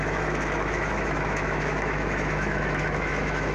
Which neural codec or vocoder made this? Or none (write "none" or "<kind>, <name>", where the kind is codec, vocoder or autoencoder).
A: autoencoder, DAC-VAE